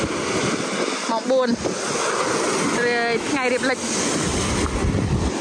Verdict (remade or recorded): recorded